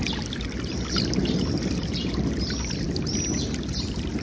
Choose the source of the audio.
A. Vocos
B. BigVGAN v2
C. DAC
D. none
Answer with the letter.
D